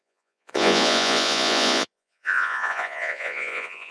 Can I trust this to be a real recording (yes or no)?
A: no